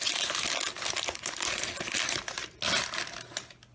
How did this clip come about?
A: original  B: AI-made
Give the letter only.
A